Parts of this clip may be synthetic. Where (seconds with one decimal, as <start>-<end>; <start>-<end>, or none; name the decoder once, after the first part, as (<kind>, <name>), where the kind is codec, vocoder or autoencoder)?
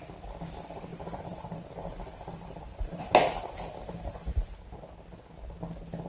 0.9-1.4 (vocoder, BigVGAN v2); 1.8-4.8